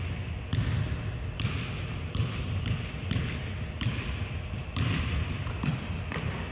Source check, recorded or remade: recorded